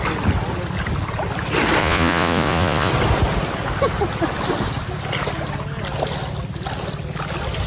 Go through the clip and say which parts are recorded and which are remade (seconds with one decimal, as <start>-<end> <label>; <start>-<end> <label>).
0.0-1.8 recorded; 1.8-2.9 remade; 2.9-7.7 recorded